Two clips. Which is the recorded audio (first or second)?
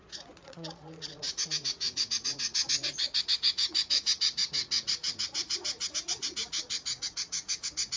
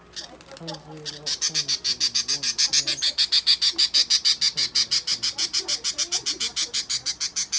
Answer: second